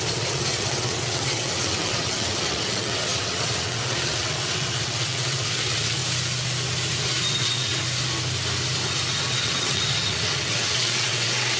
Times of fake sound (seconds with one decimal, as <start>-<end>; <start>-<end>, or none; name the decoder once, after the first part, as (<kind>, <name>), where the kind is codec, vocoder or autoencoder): 0.0-6.0 (vocoder, WaveNeXt); 7.3-7.8; 9.3-11.6